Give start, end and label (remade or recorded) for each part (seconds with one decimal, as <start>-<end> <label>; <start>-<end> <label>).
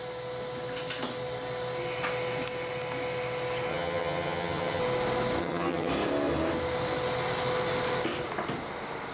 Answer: 0.0-3.7 recorded; 3.7-4.8 remade; 4.8-5.4 recorded; 5.4-5.9 remade; 5.9-9.1 recorded